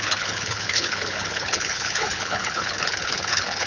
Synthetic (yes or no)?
yes